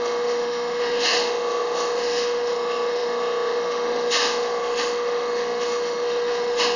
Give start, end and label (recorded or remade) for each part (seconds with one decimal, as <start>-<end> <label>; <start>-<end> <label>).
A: 0.0-6.8 remade